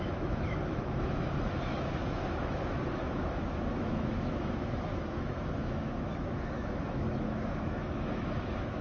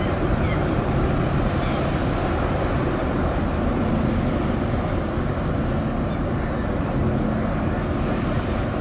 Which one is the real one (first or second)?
second